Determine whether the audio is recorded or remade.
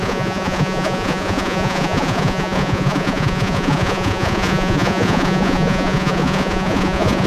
remade